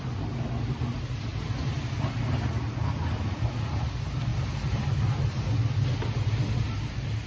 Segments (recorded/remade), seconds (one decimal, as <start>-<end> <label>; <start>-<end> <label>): 0.0-7.3 recorded